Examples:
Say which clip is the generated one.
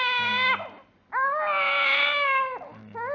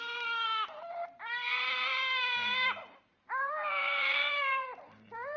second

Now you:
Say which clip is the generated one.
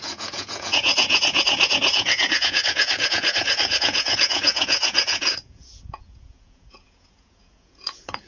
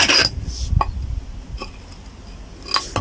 first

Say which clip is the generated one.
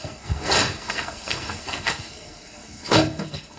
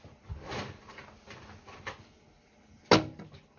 first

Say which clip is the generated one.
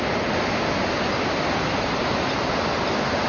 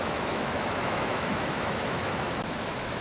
second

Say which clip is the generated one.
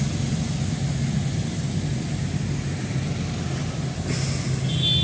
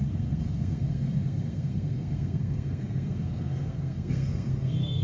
second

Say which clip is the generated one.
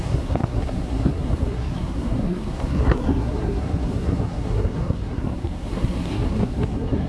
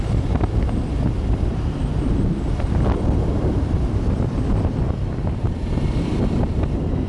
first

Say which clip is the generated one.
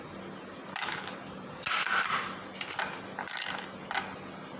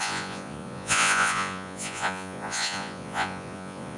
second